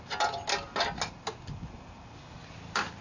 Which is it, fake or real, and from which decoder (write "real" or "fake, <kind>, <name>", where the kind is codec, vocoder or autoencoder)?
real